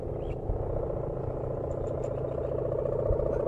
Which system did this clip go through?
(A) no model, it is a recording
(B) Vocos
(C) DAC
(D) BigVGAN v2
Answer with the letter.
A